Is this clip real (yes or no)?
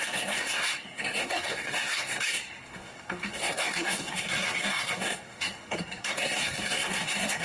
no